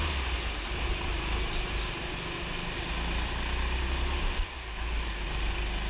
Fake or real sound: real